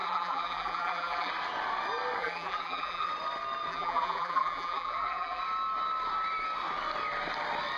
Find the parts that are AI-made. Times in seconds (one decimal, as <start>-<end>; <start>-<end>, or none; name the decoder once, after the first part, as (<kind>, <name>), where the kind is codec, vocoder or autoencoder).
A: 0.0-1.3 (vocoder, BigVGAN v2); 2.2-3.1; 3.7-5.4